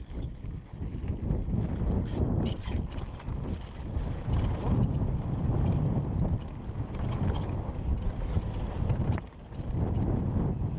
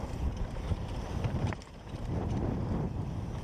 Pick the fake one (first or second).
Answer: second